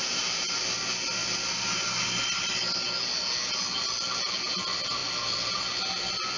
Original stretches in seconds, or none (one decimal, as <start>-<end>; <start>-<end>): 0.0-6.4